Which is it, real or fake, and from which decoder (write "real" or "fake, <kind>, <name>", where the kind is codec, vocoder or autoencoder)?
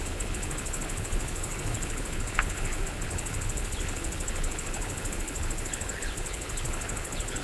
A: fake, codec, HILCodec